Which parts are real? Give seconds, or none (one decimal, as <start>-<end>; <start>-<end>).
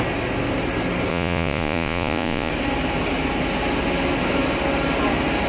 0.0-1.1; 2.5-5.5